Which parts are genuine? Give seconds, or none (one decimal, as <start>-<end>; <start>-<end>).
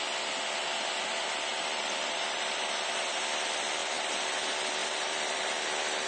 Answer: 0.0-1.5; 3.2-3.8; 4.3-4.8; 5.4-6.1